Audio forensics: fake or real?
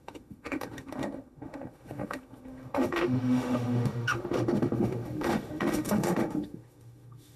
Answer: fake